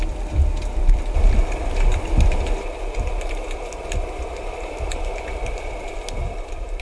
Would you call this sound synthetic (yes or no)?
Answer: yes